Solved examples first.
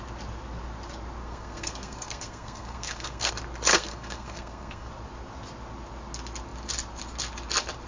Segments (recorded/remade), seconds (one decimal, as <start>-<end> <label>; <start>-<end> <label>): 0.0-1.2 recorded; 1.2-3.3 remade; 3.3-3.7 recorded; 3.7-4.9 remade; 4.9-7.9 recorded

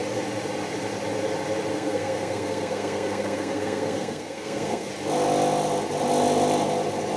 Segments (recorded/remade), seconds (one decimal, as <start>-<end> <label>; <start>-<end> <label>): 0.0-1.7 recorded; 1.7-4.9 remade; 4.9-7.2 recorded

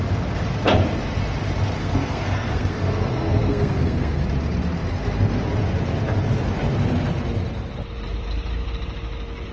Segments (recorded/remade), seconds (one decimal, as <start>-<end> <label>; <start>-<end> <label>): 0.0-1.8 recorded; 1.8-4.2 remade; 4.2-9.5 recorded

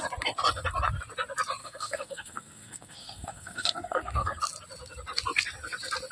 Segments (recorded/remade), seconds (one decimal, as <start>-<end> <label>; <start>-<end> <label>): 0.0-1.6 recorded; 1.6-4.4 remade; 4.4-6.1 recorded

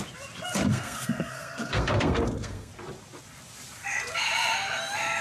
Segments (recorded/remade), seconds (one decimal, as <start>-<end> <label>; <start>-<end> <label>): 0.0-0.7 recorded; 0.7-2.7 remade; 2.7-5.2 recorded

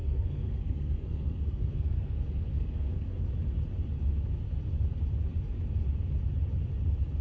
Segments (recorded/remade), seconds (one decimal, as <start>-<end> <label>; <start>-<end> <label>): 0.0-3.1 remade; 3.1-7.2 recorded

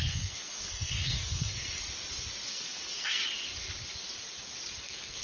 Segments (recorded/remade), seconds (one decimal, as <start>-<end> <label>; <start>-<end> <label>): 0.0-1.8 remade; 1.8-2.5 recorded; 2.5-3.2 remade; 3.2-4.8 recorded; 4.8-5.2 remade